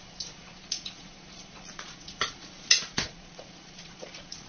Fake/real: fake